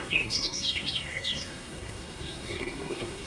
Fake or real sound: fake